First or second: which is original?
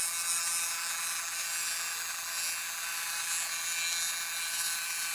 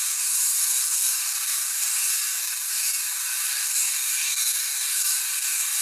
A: first